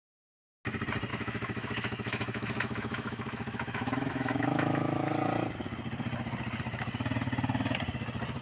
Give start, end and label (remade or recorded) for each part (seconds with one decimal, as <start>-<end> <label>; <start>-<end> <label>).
0.0-1.1 recorded; 1.1-5.1 remade; 5.1-8.4 recorded